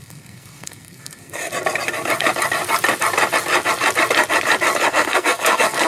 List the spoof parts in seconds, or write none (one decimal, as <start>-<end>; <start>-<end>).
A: 0.0-1.4; 4.9-5.9